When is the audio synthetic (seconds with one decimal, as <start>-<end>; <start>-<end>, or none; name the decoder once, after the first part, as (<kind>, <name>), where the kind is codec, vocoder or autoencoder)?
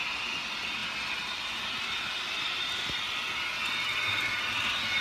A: none